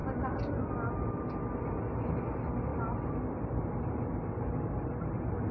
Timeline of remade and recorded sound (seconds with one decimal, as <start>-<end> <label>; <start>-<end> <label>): 0.0-5.5 recorded